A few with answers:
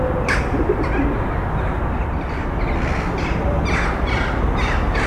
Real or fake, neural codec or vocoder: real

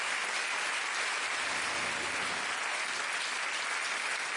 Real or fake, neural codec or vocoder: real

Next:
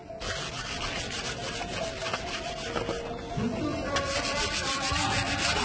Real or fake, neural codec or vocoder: real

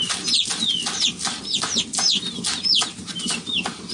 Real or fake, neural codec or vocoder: real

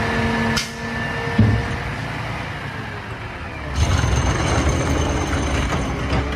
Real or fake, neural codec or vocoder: real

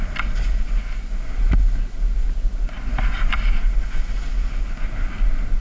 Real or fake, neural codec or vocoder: real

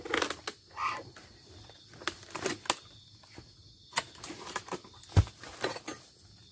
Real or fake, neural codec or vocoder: real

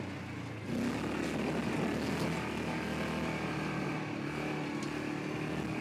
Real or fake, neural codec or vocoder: real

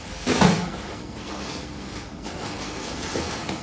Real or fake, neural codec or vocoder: fake, codec, SNAC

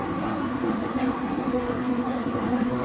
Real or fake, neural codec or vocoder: fake, codec, SNAC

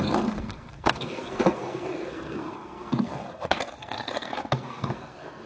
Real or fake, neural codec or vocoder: fake, codec, SNAC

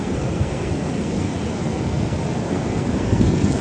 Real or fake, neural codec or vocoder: fake, codec, SNAC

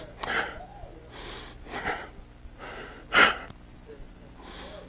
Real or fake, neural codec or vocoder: real